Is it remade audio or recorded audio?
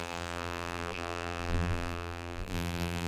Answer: remade